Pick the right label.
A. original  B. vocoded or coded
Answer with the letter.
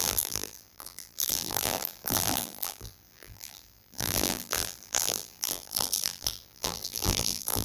B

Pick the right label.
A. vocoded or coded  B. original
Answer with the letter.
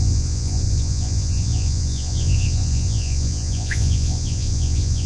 A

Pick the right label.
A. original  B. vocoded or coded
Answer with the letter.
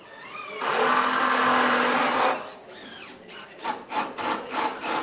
A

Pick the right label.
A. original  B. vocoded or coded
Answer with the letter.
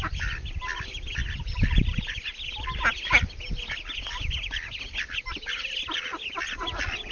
A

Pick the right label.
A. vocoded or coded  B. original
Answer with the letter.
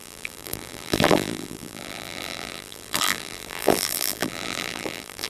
A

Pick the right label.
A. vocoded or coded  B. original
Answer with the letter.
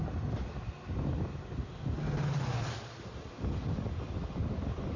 B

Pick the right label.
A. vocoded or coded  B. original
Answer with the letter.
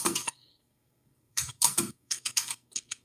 A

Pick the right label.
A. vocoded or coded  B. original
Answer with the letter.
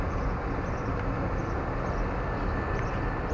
B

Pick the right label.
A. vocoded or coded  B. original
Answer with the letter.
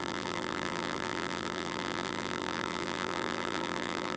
A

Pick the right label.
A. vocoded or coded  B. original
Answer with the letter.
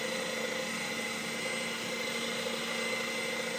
B